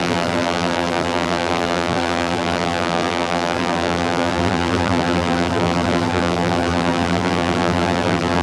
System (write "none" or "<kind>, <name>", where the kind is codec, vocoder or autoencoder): vocoder, BigVGAN v2